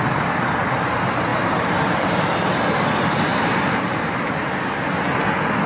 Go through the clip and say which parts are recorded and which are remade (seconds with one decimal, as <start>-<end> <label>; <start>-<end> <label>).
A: 0.0-1.3 recorded; 1.3-2.9 remade; 2.9-3.3 recorded; 3.3-4.3 remade; 4.3-5.7 recorded